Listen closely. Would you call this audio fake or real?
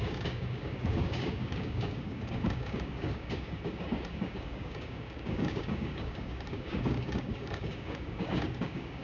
fake